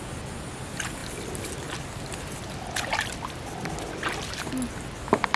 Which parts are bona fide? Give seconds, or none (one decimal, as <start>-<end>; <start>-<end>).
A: 0.0-5.4